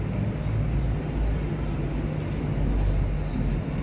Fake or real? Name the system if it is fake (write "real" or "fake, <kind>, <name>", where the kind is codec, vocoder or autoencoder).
real